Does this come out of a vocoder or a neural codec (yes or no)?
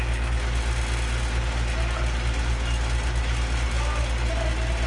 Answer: no